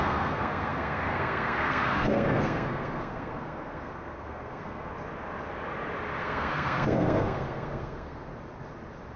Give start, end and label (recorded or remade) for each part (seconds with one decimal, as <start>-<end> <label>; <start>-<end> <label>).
0.0-4.9 remade; 4.9-6.2 recorded; 6.2-8.3 remade; 8.3-9.2 recorded